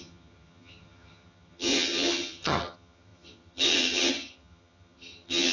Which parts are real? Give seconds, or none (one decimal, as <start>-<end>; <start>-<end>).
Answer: none